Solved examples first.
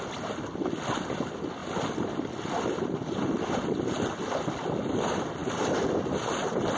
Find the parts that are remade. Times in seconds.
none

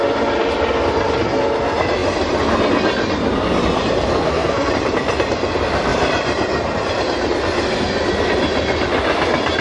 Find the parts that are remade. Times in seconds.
4.1-4.7 (codec, SNAC)

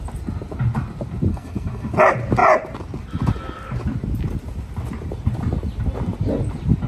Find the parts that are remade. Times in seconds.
1.3-1.9 (codec, SNAC)